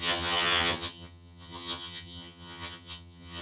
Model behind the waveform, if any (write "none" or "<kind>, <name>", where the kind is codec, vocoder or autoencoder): vocoder, HiFi-GAN